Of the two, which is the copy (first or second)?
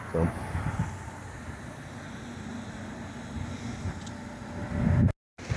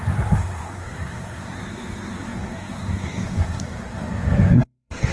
second